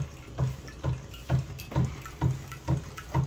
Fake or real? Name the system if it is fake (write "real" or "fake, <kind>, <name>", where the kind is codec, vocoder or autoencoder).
real